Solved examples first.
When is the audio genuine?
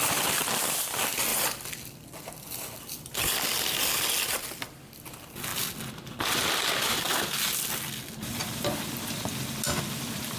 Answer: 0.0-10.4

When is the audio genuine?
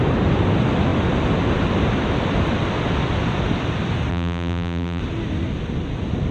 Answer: 0.0-4.1; 5.0-6.3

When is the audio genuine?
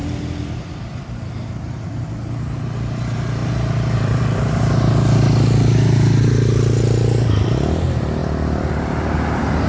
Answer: 2.1-3.4; 4.7-8.2; 8.8-9.7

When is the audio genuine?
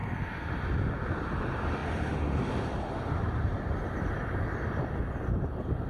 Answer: 0.0-5.9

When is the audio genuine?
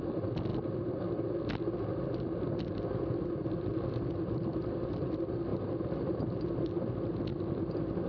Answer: 0.0-8.1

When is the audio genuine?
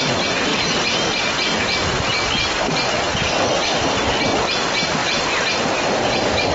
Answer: 0.0-0.5; 2.7-6.5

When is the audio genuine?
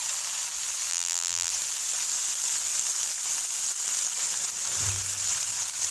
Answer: 0.0-0.9; 1.5-5.9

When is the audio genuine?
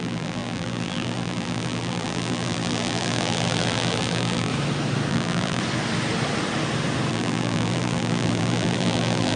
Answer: 4.5-5.1; 5.6-7.1